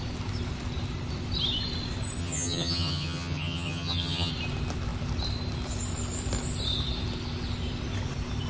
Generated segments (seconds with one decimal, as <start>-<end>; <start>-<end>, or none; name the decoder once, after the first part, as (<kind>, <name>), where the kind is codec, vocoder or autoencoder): 2.2-4.3 (vocoder, HiFi-GAN)